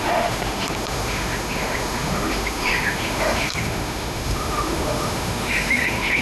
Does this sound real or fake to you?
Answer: fake